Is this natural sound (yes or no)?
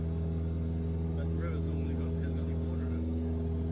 yes